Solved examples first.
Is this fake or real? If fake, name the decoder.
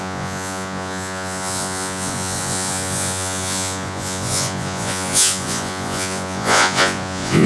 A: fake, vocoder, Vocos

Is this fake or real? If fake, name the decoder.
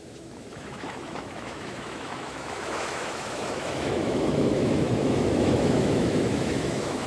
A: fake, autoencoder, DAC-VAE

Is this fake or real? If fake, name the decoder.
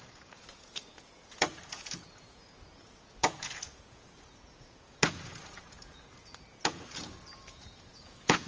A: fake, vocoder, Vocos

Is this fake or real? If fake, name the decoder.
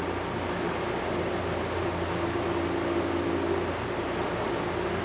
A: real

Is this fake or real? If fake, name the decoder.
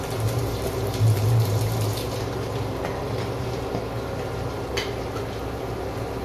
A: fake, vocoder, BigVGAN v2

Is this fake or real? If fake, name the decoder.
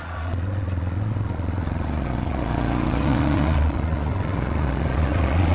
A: fake, vocoder, Vocos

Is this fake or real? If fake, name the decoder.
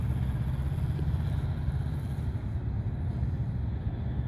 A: real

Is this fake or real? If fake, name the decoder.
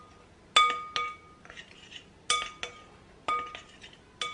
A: real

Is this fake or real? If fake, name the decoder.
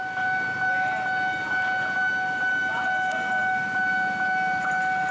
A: real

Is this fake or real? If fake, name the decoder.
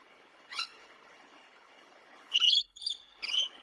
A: fake, codec, HILCodec